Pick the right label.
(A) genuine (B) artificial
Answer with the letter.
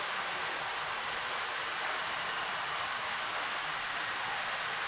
A